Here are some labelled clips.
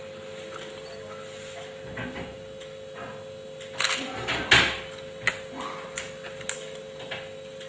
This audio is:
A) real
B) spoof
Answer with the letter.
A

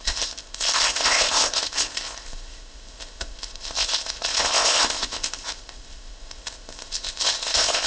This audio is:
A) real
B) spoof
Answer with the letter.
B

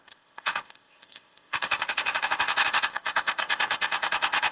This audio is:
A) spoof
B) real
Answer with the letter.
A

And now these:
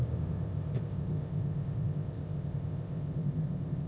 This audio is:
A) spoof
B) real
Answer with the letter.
A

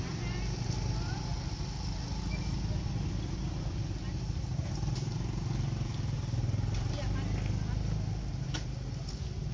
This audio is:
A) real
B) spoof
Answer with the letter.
A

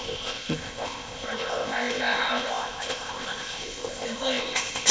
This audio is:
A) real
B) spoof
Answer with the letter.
B